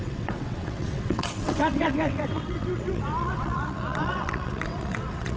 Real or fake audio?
fake